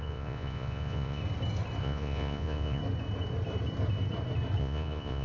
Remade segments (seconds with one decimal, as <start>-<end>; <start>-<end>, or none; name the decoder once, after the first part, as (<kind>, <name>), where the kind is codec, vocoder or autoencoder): 0.0-1.2 (vocoder, Vocos); 1.8-2.8; 4.6-5.2

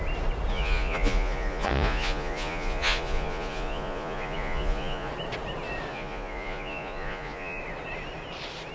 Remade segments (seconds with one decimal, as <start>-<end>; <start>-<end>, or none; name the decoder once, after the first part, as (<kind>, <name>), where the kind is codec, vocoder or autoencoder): 0.5-5.1 (vocoder, Vocos); 5.9-7.6

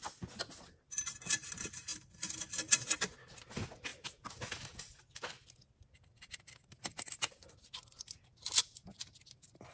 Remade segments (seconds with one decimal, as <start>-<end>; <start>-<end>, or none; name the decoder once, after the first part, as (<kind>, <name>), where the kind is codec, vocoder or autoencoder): none